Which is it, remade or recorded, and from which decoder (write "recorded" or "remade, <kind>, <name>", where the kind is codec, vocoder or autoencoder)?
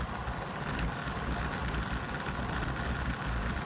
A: recorded